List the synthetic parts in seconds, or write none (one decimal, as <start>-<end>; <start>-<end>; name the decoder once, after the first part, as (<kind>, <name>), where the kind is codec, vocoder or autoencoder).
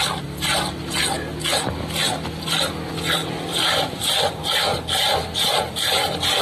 0.0-0.5 (vocoder, BigVGAN v2); 2.9-6.4